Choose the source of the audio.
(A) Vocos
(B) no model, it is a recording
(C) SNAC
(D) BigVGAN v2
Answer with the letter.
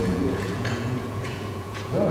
A